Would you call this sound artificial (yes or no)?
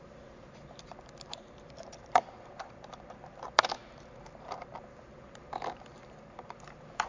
yes